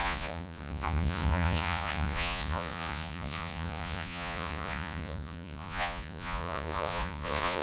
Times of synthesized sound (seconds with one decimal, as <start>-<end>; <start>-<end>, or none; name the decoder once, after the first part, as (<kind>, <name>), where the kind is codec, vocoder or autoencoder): 0.0-7.6 (vocoder, Vocos)